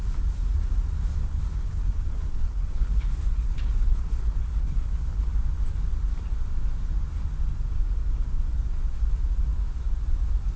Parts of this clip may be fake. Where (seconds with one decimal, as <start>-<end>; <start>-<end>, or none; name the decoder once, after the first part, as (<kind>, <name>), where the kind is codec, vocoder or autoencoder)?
1.2-5.3 (codec, HILCodec)